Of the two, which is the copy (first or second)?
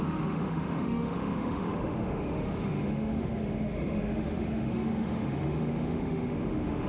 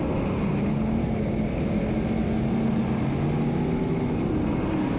first